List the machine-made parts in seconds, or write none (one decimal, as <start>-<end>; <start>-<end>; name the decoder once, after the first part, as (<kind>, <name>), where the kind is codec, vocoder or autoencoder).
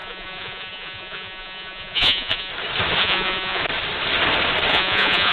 0.0-2.5 (vocoder, Vocos); 3.0-3.6; 4.7-5.3